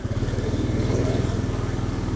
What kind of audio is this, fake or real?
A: fake